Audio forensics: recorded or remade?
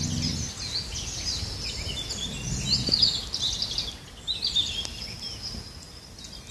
recorded